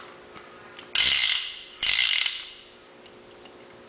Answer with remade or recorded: recorded